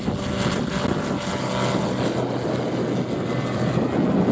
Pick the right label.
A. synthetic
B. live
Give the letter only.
B